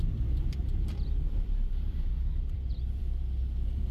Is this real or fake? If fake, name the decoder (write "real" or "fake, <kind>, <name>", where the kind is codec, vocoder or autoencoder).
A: fake, vocoder, BigVGAN v2